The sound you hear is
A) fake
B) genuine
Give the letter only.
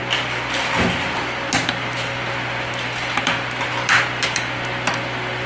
B